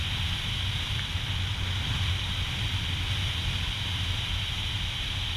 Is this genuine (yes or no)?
yes